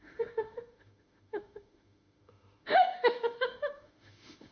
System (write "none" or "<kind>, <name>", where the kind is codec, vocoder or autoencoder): autoencoder, DAC-VAE